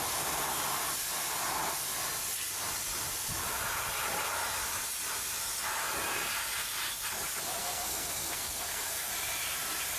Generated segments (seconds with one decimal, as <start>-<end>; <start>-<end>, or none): 7.6-9.1